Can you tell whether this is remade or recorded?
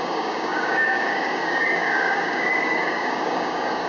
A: remade